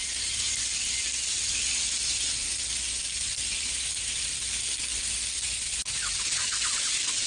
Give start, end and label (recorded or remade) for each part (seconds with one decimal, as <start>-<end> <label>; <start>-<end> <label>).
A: 0.0-0.6 remade; 0.6-3.2 recorded; 3.2-4.3 remade; 4.3-7.3 recorded